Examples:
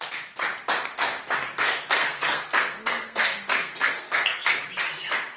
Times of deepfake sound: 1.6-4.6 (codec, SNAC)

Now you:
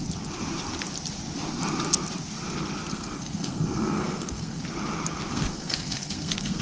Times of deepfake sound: 2.9-4.6 (codec, SNAC); 5.3-6.6

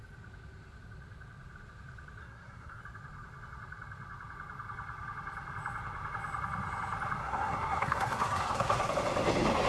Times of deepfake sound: 2.2-2.8 (codec, SNAC); 7.2-8.9

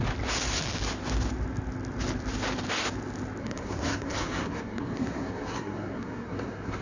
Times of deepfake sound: 3.4-6.8 (codec, SNAC)

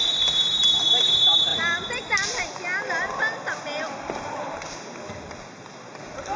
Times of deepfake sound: none

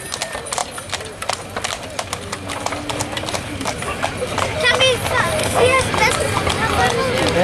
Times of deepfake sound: 5.4-5.9 (codec, SNAC)

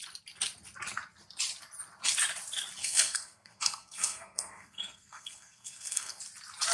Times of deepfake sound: 2.8-6.2 (codec, SNAC)

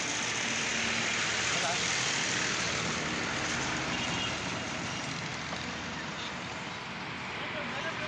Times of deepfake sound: none